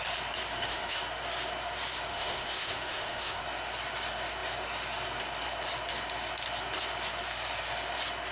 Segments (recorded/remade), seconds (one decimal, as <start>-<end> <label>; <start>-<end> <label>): 0.0-0.5 recorded; 0.5-1.0 remade; 1.0-2.1 recorded; 2.1-3.4 remade; 3.4-8.3 recorded